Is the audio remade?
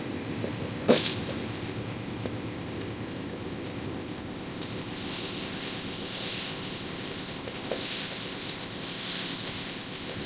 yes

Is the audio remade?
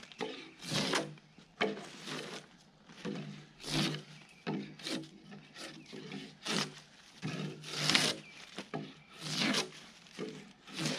no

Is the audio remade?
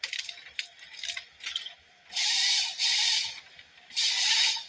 no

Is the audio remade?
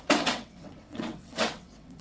yes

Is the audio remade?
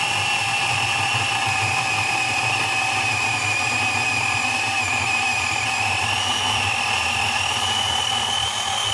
no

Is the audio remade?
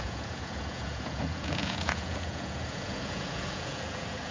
yes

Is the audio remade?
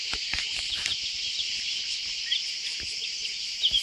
no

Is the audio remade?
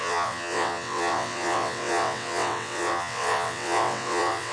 yes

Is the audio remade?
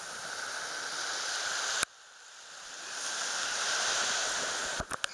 no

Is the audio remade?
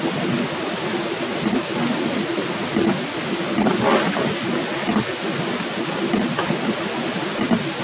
no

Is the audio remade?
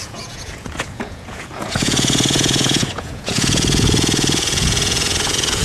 yes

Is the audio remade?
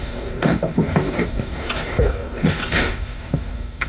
yes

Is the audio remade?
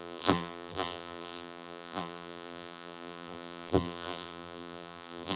yes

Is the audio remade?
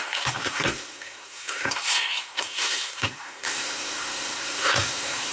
yes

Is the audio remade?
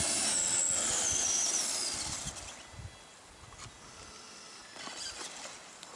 no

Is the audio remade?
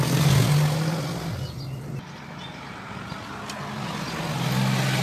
no